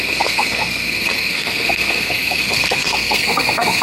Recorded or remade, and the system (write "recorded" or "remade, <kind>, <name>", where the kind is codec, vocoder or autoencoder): remade, codec, SNAC